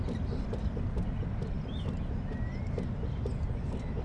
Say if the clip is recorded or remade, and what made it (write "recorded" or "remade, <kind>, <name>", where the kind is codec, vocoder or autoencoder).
recorded